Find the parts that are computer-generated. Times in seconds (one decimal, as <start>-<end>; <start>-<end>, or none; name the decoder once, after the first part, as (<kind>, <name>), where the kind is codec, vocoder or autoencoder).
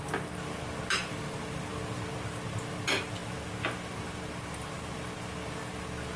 none